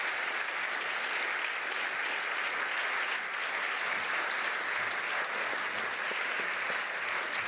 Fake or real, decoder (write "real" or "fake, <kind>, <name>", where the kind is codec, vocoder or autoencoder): real